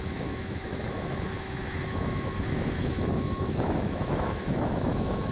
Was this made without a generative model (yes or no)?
no